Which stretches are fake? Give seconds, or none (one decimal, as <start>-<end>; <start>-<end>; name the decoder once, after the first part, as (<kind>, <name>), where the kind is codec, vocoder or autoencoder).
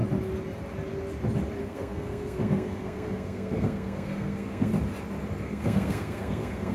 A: 1.6-4.7 (codec, SNAC); 5.4-6.7